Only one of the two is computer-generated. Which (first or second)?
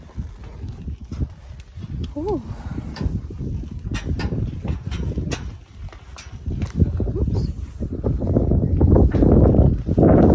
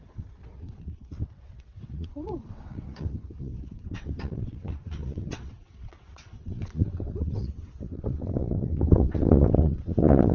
second